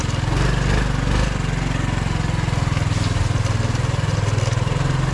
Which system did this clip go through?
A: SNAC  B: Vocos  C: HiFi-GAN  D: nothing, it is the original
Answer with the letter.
D